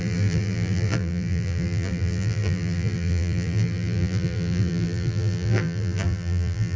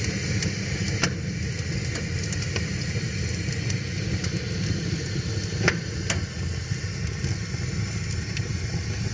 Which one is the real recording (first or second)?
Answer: second